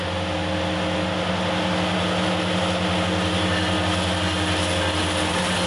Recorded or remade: recorded